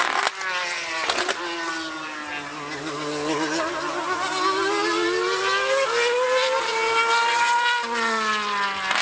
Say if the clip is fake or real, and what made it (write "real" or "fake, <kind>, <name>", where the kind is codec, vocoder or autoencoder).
real